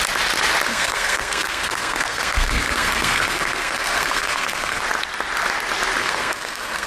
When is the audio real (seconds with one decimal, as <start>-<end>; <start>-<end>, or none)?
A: 0.0-0.7; 4.8-6.0